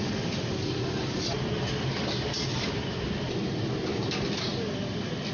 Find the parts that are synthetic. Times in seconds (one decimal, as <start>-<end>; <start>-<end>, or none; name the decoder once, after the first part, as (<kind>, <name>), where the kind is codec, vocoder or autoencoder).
2.5-3.0 (vocoder, BigVGAN v2)